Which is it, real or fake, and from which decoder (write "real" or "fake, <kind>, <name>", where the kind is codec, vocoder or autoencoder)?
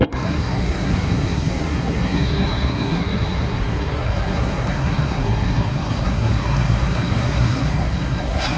fake, codec, SNAC